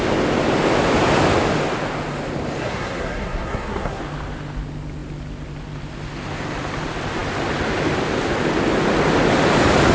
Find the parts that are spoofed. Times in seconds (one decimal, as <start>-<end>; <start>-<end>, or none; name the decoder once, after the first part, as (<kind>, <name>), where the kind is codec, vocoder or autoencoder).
2.6-4.0 (codec, SNAC)